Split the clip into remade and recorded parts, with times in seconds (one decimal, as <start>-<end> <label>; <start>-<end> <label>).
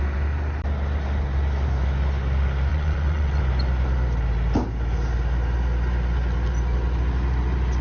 0.0-2.7 recorded; 2.7-3.4 remade; 3.4-7.8 recorded